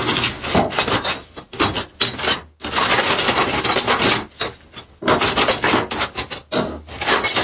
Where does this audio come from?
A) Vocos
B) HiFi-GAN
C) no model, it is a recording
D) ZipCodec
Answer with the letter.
C